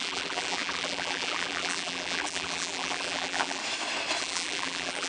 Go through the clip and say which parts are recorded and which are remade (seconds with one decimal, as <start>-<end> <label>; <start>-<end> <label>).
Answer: 0.0-3.6 remade; 3.6-4.2 recorded; 4.2-5.1 remade